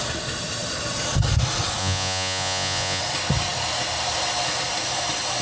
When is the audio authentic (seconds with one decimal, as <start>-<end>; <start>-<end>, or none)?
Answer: 0.0-1.8; 3.0-5.4